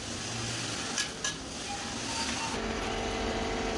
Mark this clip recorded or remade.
recorded